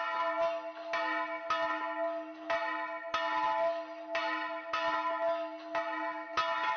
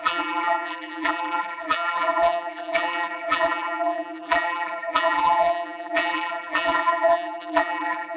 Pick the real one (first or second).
first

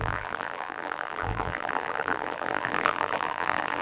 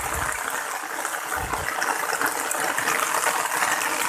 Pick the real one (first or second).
second